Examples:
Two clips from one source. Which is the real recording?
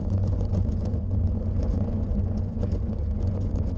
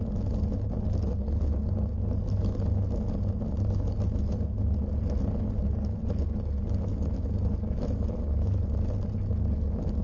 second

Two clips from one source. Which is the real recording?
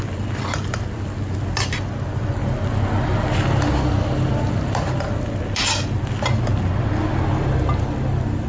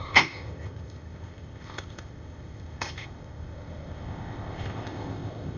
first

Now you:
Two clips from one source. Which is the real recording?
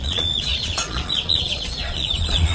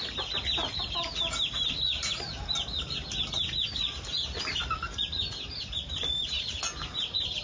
second